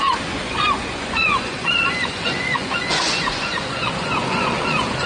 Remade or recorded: remade